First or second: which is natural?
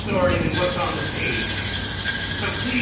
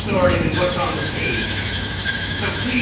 first